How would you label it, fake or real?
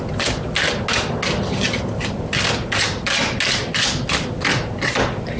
real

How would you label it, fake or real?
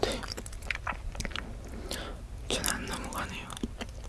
real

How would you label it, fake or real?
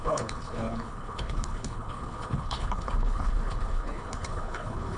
fake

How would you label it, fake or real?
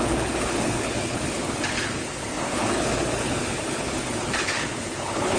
fake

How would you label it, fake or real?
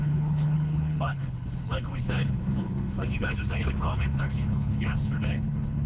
fake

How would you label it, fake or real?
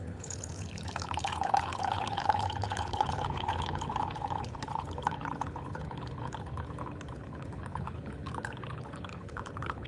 fake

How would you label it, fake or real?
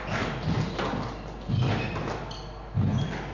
real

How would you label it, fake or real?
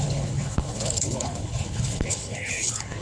fake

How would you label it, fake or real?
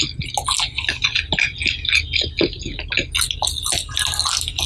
real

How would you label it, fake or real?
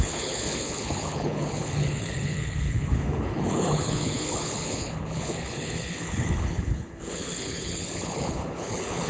fake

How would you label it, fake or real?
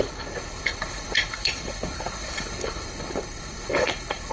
fake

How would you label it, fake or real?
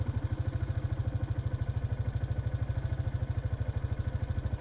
real